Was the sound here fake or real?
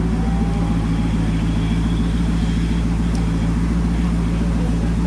real